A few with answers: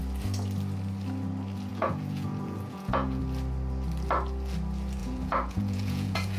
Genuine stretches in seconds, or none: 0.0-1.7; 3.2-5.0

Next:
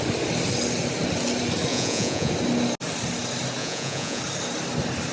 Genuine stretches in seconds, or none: 0.0-1.7; 2.3-3.6; 4.2-5.1

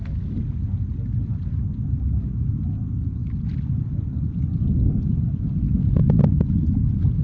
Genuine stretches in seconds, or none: 0.0-7.2

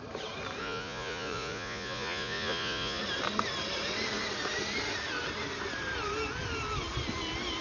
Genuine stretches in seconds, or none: 0.0-0.6; 3.0-7.6